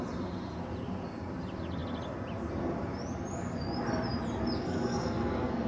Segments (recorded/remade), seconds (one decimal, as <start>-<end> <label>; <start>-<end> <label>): 0.0-4.6 recorded; 4.6-5.7 remade